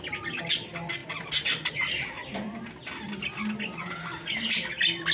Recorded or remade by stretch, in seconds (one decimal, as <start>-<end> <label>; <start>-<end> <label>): 0.0-5.1 recorded